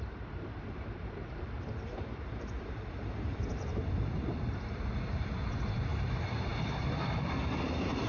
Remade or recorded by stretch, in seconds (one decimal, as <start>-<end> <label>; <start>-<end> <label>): 0.0-8.1 remade